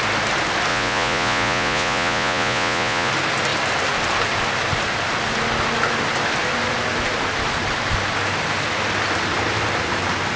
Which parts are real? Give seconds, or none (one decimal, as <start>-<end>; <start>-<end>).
0.0-0.7; 3.1-10.4